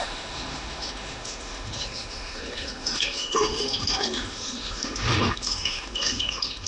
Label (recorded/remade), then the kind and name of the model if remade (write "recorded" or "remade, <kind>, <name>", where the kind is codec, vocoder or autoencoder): remade, autoencoder, DAC-VAE